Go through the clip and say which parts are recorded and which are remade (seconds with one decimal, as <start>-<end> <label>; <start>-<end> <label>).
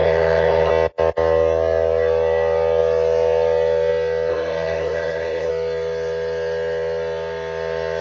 0.0-0.7 remade; 0.7-4.3 recorded; 4.3-5.5 remade; 5.5-8.0 recorded